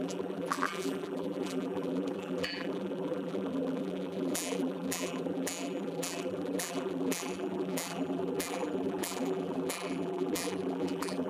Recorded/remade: remade